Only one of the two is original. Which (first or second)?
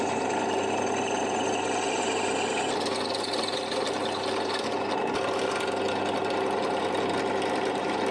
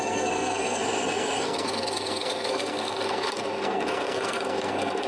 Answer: first